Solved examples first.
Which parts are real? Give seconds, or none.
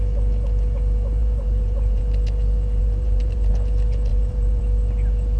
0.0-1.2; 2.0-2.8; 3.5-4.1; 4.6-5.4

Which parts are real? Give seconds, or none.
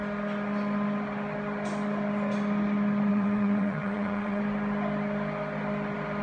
0.0-3.1; 4.4-6.2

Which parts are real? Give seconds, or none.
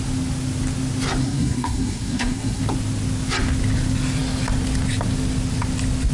0.0-1.2; 2.6-6.1